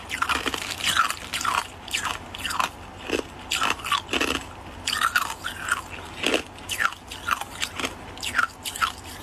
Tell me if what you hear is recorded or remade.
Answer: recorded